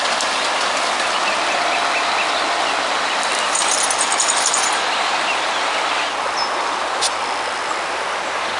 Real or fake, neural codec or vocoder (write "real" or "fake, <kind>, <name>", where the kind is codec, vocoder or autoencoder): real